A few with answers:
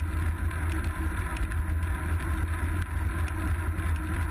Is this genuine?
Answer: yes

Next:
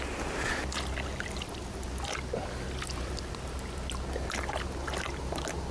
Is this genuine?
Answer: yes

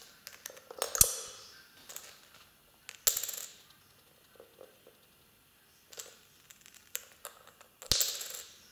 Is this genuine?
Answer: yes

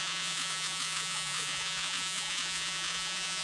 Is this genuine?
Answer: no